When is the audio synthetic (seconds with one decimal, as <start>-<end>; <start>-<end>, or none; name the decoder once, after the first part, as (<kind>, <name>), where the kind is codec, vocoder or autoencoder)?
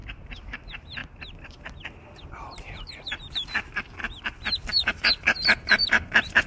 0.0-1.0 (vocoder, BigVGAN v2); 2.7-4.0; 4.7-6.5